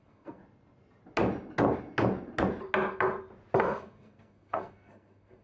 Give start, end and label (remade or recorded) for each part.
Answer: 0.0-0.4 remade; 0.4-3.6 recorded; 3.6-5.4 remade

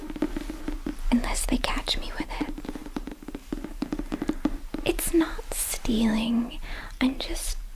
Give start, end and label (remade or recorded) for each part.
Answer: 0.0-7.7 remade

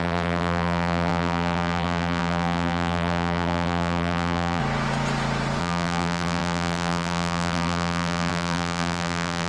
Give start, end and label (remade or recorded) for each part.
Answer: 0.0-4.6 remade; 4.6-5.6 recorded; 5.6-9.5 remade